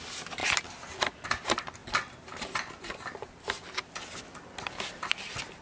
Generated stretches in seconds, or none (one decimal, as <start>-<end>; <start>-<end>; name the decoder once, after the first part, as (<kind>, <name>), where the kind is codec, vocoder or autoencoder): none